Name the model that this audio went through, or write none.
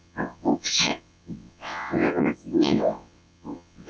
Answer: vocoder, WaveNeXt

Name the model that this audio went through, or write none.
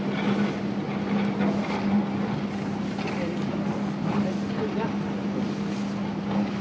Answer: none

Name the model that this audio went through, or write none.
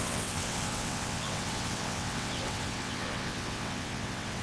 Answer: vocoder, WaveNeXt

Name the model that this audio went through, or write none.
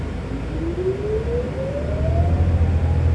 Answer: none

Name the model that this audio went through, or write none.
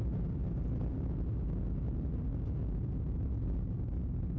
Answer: none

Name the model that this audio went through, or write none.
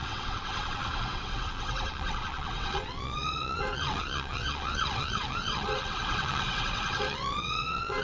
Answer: vocoder, WaveNeXt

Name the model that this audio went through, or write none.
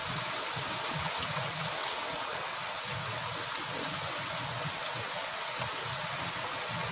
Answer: vocoder, WaveNeXt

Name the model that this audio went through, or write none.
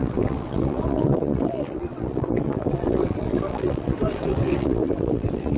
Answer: vocoder, WaveNeXt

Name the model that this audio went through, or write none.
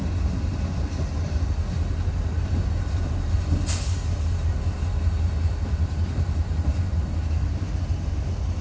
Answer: none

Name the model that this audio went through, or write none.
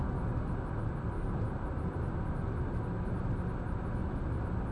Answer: none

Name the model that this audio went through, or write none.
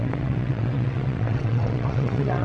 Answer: vocoder, WaveNeXt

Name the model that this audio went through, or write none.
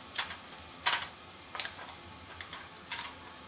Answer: none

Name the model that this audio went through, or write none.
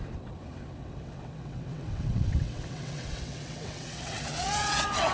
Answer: vocoder, WaveNeXt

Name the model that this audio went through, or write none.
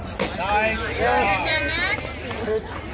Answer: none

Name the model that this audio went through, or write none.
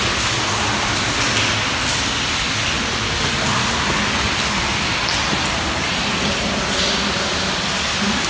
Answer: none